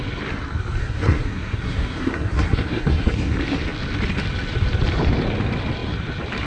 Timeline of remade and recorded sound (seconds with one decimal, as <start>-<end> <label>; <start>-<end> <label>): 0.0-0.8 recorded; 0.8-3.3 remade; 3.3-6.5 recorded